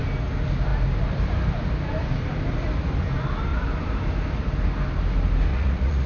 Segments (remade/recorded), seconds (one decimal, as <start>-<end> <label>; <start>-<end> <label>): 0.0-5.5 recorded; 5.5-6.1 remade